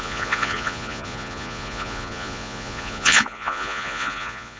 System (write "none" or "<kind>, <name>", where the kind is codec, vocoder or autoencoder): vocoder, Vocos